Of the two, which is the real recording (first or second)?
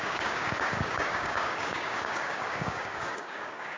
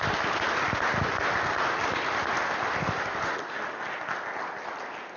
second